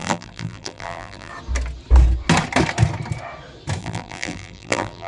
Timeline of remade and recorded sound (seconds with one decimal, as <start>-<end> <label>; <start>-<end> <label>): 0.0-1.3 remade; 1.3-3.8 recorded; 3.8-5.1 remade